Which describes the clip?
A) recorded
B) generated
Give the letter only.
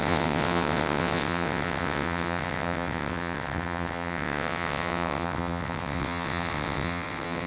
B